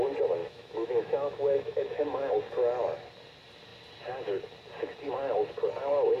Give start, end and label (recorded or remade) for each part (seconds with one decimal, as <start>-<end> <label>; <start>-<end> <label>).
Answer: 0.0-0.4 recorded; 0.4-2.3 remade; 2.3-6.2 recorded